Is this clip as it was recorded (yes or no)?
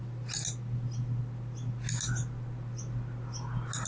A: yes